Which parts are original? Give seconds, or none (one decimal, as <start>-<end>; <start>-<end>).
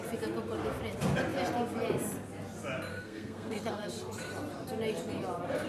0.0-2.9; 3.9-5.7